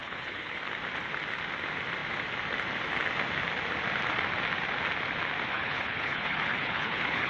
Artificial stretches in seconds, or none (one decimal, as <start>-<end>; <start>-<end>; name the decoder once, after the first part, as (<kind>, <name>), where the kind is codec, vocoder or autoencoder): 0.0-0.6 (codec, HILCodec); 5.5-7.3